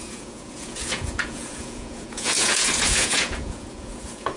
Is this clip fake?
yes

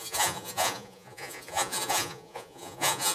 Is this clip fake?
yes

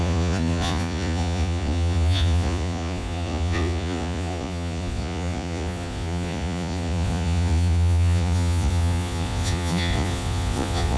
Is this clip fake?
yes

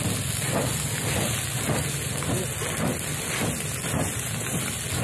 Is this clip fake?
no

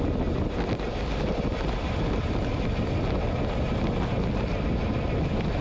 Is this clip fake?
no